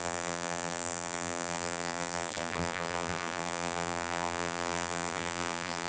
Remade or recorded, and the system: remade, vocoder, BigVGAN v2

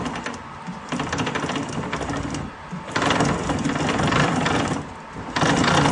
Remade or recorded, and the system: recorded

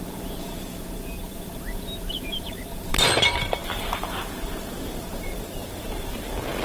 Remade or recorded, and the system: remade, vocoder, BigVGAN v2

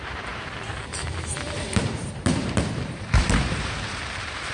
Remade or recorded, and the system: remade, vocoder, BigVGAN v2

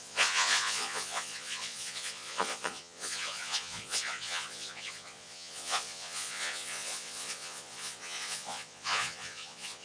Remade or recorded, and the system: remade, vocoder, Vocos